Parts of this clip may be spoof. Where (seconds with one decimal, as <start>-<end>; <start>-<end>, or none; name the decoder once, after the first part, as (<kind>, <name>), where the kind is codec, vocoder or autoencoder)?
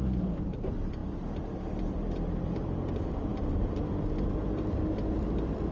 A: 0.0-1.0 (vocoder, BigVGAN v2); 1.8-3.3; 3.9-5.7